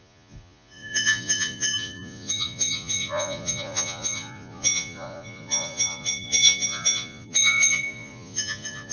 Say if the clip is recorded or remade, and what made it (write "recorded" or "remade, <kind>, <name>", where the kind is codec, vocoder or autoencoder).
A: remade, vocoder, Vocos